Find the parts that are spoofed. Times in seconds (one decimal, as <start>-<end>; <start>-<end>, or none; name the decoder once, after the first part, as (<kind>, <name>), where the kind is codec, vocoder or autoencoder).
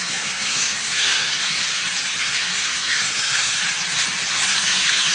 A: 0.0-1.6 (codec, SNAC); 2.2-3.6; 4.3-5.1